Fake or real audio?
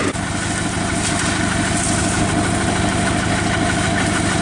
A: real